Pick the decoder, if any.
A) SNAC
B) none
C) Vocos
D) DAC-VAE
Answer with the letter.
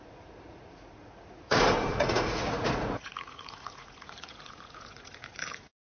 C